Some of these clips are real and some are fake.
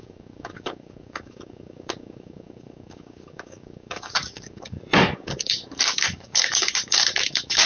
fake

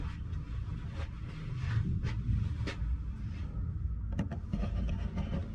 real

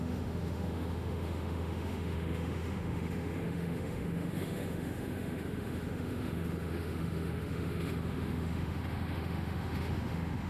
fake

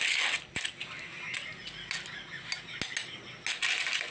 real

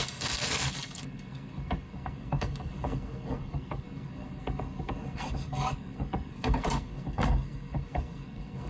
fake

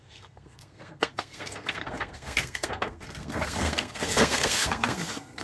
fake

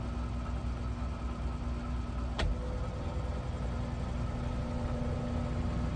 real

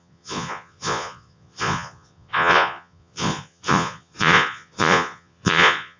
fake